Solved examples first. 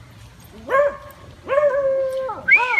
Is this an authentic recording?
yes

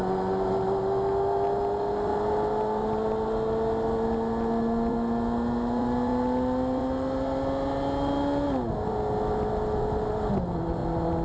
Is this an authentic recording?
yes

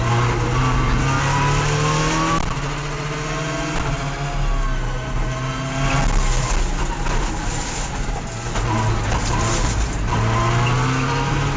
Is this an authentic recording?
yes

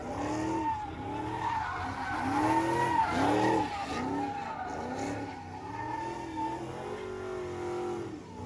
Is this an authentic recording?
yes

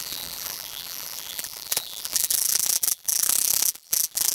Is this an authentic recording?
no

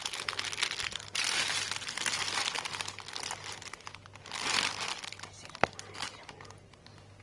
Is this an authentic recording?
yes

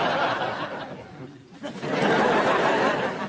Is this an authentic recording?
yes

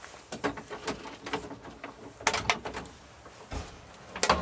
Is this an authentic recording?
yes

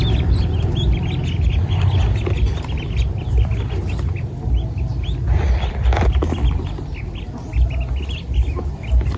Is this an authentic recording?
yes